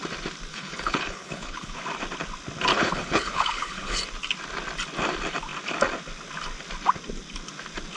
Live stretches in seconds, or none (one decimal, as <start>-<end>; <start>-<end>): 0.0-0.5; 1.8-2.7; 4.0-8.0